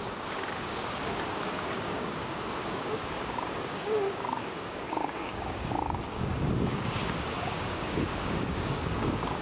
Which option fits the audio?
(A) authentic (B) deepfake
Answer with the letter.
B